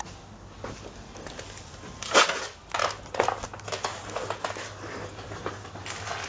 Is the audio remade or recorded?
recorded